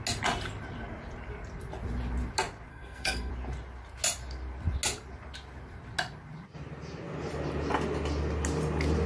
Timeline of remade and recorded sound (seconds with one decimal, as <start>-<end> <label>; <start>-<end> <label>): 0.0-2.7 recorded; 2.7-3.3 remade; 3.3-9.1 recorded